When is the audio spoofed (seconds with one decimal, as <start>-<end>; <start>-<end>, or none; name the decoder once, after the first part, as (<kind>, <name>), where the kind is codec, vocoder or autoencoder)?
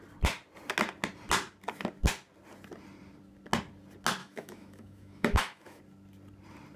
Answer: 4.2-5.8 (autoencoder, DAC-VAE)